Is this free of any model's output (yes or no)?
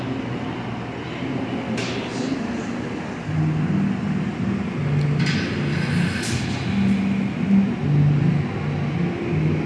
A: yes